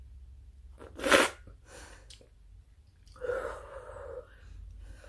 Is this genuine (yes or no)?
yes